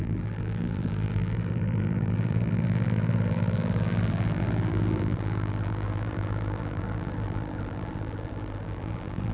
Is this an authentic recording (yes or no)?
no